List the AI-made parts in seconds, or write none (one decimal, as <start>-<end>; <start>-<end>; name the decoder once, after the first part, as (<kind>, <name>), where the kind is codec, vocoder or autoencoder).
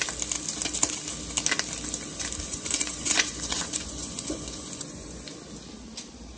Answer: 2.5-5.4 (vocoder, Vocos)